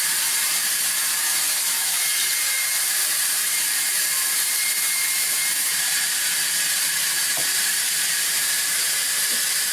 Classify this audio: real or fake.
fake